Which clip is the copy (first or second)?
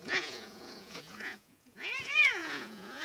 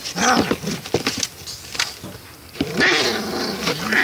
first